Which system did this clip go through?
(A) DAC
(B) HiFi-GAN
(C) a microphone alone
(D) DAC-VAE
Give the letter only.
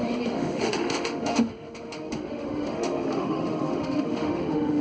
D